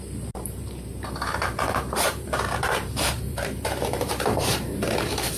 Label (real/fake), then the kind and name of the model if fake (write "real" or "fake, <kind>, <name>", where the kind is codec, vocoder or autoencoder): fake, vocoder, BigVGAN v2